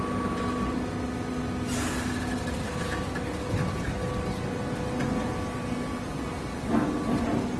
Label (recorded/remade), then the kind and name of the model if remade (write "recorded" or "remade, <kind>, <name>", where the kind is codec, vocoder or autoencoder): recorded